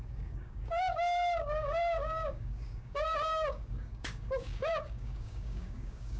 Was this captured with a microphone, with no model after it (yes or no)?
no